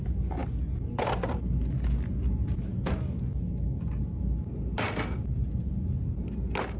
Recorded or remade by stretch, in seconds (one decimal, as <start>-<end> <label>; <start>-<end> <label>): 0.0-6.8 recorded

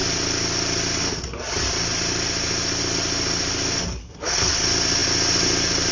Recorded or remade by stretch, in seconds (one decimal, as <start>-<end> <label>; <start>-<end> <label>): 0.0-4.0 recorded; 4.0-4.5 remade; 4.5-5.9 recorded

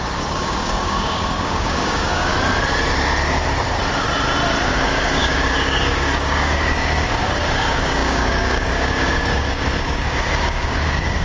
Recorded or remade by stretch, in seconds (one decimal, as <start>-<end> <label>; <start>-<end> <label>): 0.0-2.3 remade; 2.3-4.7 recorded; 4.7-11.2 remade

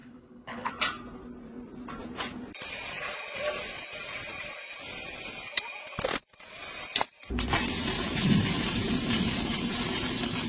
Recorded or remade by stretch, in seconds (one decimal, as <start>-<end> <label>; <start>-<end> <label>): 0.0-0.7 remade; 0.7-10.5 recorded

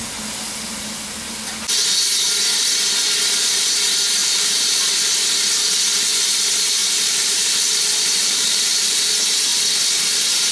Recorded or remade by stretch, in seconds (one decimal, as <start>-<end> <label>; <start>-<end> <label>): 0.0-4.2 recorded; 4.2-4.8 remade; 4.8-6.8 recorded; 6.8-9.0 remade; 9.0-10.5 recorded

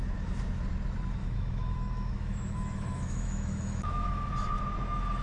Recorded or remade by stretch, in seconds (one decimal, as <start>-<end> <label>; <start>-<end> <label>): 0.0-1.2 recorded; 1.2-4.3 remade; 4.3-5.2 recorded

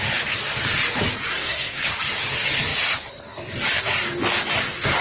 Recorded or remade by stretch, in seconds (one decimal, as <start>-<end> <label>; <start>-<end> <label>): 0.0-1.3 recorded; 1.3-1.9 remade; 1.9-5.0 recorded